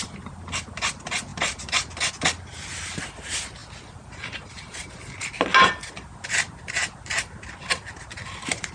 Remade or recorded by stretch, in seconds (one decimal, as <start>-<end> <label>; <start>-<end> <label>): 0.0-8.7 recorded